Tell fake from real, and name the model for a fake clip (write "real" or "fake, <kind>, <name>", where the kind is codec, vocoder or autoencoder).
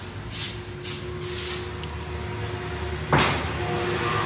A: real